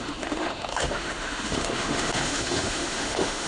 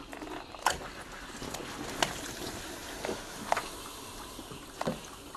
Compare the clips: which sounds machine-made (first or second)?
first